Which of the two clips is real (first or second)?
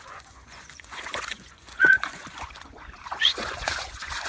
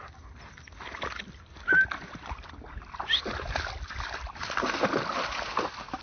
second